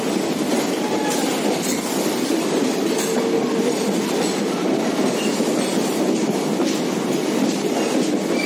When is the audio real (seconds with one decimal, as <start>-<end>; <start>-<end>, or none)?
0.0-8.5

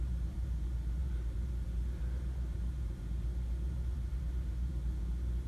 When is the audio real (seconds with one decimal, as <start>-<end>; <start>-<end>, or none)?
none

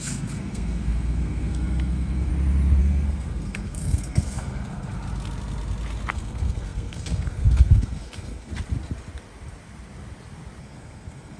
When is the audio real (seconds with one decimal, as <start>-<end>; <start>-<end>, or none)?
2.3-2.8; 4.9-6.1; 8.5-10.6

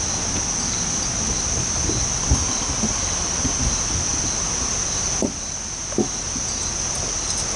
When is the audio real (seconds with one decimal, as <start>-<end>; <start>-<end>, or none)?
0.0-7.6